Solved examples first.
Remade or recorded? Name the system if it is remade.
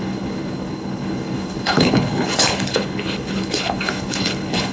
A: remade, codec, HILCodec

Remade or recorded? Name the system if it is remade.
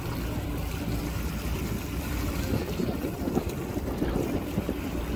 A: recorded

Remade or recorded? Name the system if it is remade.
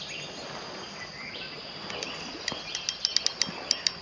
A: recorded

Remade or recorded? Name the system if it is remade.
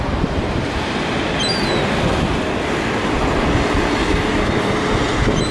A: recorded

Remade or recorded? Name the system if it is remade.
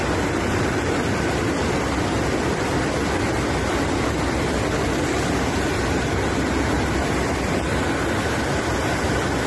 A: recorded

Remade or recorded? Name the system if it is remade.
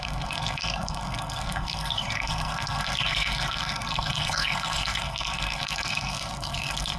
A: remade, codec, SNAC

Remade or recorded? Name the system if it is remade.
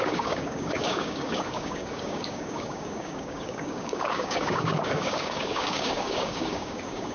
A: remade, codec, DAC